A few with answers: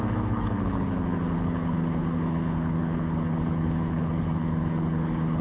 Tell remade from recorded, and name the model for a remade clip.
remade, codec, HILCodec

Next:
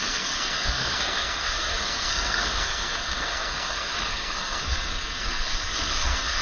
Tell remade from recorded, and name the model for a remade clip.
remade, codec, SNAC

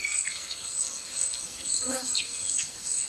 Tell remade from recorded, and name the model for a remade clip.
remade, codec, SNAC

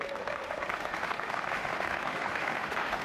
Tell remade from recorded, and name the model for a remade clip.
remade, autoencoder, DAC-VAE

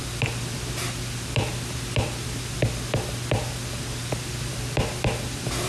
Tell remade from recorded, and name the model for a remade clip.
recorded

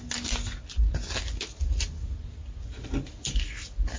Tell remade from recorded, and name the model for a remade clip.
recorded